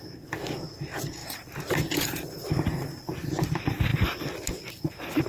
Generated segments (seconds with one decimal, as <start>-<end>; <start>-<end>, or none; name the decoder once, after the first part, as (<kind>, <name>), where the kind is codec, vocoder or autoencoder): 1.2-3.0 (vocoder, BigVGAN v2)